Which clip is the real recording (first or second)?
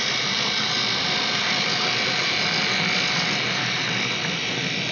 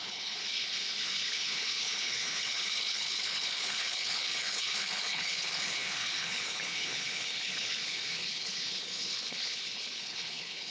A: first